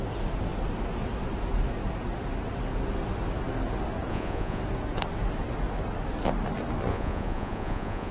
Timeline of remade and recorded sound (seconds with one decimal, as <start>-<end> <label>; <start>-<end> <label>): 0.0-4.1 recorded; 4.1-4.6 remade; 4.6-6.9 recorded; 6.9-8.1 remade